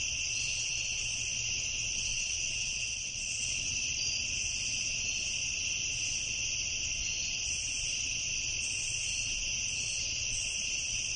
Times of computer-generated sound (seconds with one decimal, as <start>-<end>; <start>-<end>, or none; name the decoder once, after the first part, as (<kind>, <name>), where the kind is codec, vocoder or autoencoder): 2.1-3.5 (vocoder, WaveNeXt)